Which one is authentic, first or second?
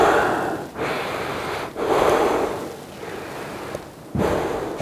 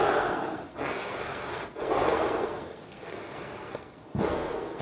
first